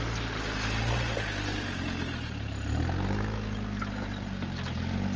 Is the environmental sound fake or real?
real